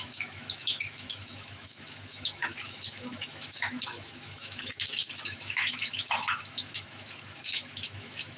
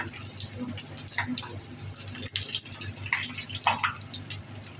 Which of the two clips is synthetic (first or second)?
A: first